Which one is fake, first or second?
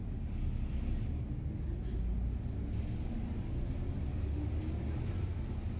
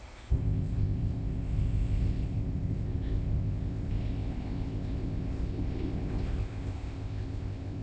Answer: second